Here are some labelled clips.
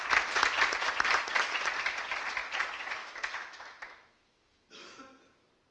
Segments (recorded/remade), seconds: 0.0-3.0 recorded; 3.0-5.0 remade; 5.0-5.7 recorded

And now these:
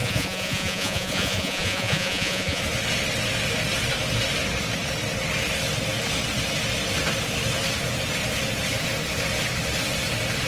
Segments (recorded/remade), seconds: 0.0-2.6 remade; 2.6-10.5 recorded

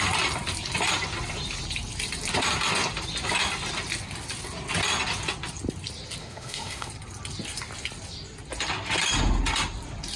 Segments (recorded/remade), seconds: 0.0-6.2 recorded; 6.2-6.9 remade; 6.9-10.2 recorded

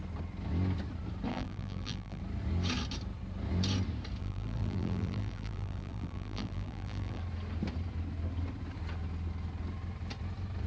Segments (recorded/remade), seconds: 0.0-1.3 recorded; 1.3-2.2 remade; 2.2-4.2 recorded; 4.2-7.2 remade; 7.2-10.7 recorded